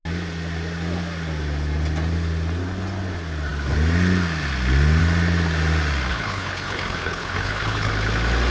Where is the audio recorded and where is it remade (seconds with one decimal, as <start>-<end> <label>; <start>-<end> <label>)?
0.0-6.1 recorded; 6.1-7.9 remade; 7.9-8.5 recorded